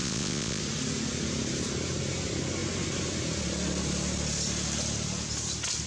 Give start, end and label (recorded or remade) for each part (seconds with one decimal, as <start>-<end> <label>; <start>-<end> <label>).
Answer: 0.0-0.6 remade; 0.6-5.9 recorded

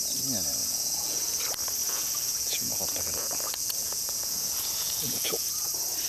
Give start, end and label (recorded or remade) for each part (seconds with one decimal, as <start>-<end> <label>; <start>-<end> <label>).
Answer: 0.0-0.6 recorded; 0.6-1.4 remade; 1.4-1.8 recorded; 1.8-5.5 remade; 5.5-6.1 recorded

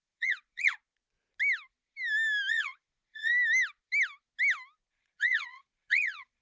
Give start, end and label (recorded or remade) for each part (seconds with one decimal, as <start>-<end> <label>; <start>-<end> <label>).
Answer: 0.0-0.8 remade; 0.8-2.5 recorded; 2.5-3.3 remade; 3.3-4.9 recorded; 4.9-6.4 remade